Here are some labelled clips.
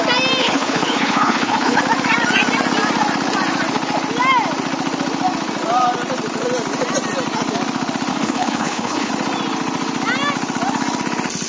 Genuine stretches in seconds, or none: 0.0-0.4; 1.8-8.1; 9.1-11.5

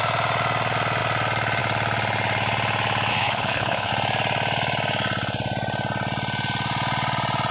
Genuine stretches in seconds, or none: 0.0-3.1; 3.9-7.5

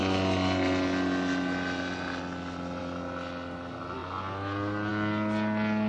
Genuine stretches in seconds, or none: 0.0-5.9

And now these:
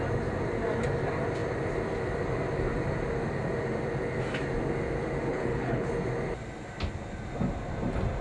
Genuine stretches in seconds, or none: 0.0-5.3; 5.9-8.2

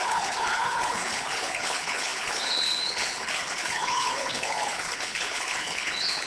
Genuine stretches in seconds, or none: none

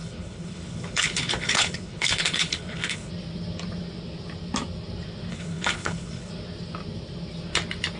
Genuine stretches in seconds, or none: 3.1-5.3; 6.3-8.0